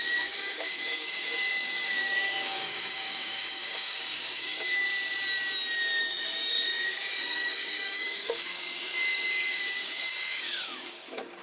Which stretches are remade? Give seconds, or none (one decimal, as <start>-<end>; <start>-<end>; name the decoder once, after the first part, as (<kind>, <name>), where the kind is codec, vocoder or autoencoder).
0.0-4.9 (codec, DAC); 6.0-11.4